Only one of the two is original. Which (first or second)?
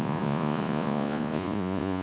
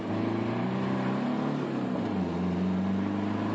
second